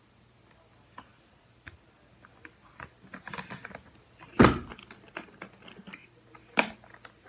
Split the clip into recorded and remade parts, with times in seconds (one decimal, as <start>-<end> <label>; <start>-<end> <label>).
0.0-7.3 recorded